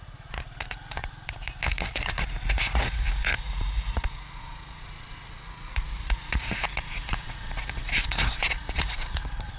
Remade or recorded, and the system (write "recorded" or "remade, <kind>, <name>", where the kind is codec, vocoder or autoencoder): remade, vocoder, Vocos